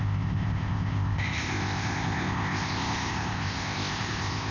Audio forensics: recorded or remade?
remade